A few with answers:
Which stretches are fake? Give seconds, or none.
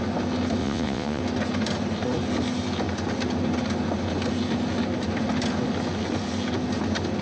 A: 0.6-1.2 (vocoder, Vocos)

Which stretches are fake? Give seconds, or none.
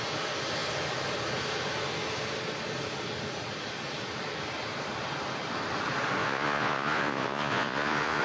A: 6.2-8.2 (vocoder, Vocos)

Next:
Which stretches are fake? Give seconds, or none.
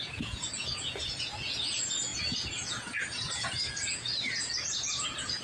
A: 0.0-5.4 (vocoder, Vocos)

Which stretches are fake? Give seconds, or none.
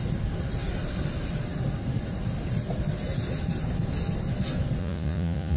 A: 4.8-5.6 (vocoder, Vocos)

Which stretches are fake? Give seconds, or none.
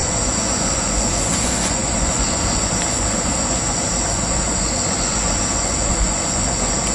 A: 0.0-6.9 (vocoder, Vocos)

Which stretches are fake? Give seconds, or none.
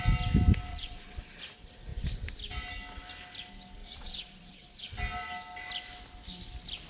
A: 0.7-1.4 (vocoder, Vocos); 3.8-4.9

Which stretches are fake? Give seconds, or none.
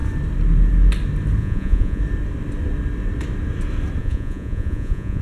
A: 1.4-2.0 (vocoder, Vocos); 4.0-5.2